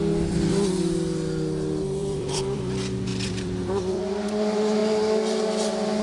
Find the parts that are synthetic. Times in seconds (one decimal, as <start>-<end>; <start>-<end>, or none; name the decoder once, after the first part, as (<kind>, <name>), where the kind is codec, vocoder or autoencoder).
2.0-2.6 (vocoder, BigVGAN v2); 3.1-4.0; 4.8-5.4